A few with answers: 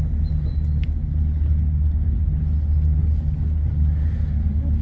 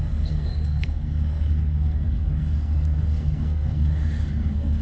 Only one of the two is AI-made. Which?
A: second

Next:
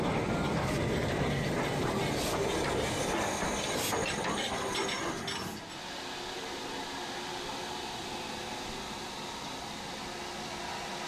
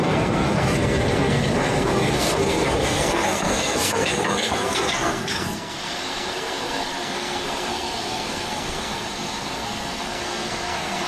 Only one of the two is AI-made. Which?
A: second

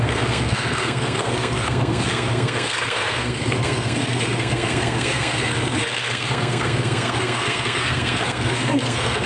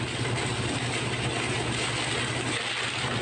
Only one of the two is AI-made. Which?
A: first